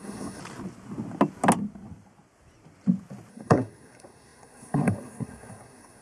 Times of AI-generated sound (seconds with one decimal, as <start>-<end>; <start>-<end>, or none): 0.0-0.4; 3.3-6.0